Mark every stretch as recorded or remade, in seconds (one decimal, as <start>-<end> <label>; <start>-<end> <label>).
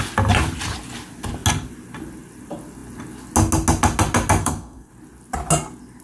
0.0-4.4 recorded; 4.4-4.9 remade; 4.9-6.0 recorded